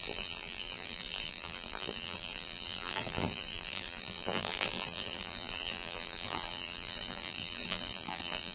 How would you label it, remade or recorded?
remade